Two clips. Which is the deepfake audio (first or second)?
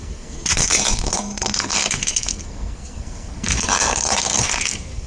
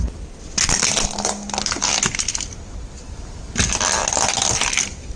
first